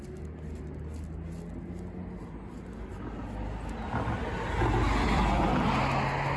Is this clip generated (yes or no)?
no